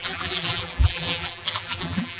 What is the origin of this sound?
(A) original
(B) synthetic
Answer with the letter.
B